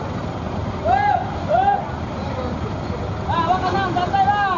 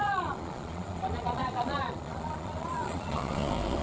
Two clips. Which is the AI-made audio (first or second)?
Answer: second